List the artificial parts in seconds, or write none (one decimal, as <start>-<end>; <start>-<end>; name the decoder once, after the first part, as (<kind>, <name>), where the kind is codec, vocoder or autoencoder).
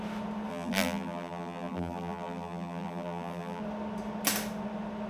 0.5-3.6 (vocoder, BigVGAN v2)